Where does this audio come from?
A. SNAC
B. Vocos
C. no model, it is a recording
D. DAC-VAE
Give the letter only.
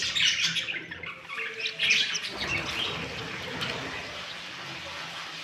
C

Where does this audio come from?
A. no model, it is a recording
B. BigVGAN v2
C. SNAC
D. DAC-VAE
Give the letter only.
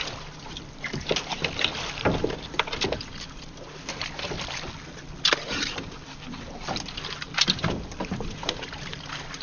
B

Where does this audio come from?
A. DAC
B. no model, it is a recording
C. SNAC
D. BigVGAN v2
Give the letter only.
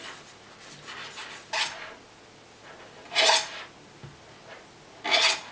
B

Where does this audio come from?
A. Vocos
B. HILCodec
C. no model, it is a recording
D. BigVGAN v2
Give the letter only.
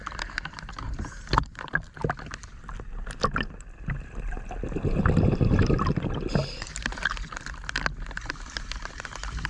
C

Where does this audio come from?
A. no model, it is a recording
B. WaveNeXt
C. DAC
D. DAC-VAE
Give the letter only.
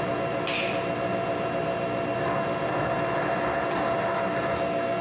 A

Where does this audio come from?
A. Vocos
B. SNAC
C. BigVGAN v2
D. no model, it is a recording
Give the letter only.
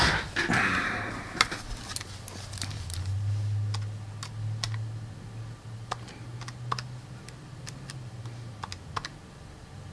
D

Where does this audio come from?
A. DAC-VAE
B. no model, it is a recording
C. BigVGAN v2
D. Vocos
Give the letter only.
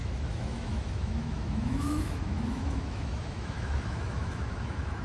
A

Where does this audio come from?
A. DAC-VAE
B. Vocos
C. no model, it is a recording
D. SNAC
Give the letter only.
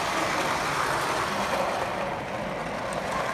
C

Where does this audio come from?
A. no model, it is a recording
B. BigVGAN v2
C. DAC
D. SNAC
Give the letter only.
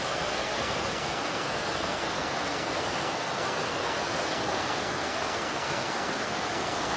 D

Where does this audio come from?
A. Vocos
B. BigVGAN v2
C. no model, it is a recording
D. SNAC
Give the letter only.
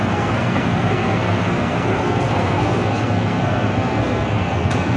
D